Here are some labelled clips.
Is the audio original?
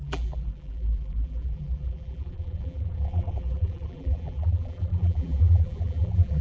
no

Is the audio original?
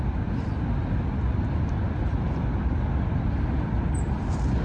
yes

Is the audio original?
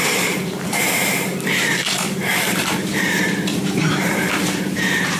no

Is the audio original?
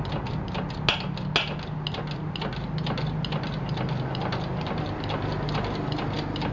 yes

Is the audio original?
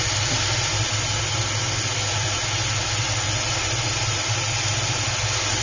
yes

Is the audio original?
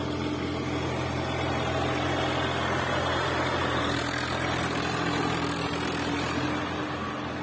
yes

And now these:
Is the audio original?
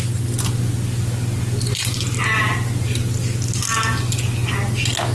yes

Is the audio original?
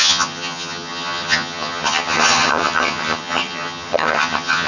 no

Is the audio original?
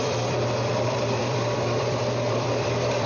no